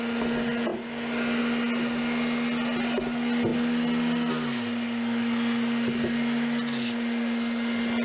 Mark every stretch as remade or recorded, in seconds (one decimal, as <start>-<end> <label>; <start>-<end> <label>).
0.0-8.0 recorded